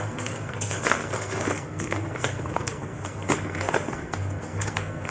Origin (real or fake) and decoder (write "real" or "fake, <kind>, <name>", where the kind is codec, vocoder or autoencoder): fake, codec, SNAC